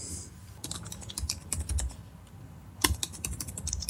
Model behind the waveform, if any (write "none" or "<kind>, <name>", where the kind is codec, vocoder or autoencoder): none